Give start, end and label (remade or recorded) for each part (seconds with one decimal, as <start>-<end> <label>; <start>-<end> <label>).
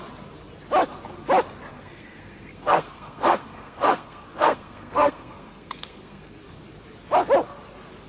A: 0.0-1.7 recorded; 1.7-6.4 remade; 6.4-8.1 recorded